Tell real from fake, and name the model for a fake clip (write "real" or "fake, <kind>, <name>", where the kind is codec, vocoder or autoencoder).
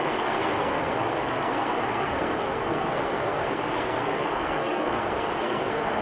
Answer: fake, codec, SNAC